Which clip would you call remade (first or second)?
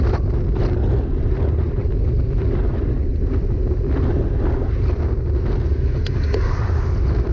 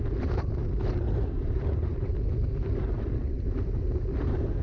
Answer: second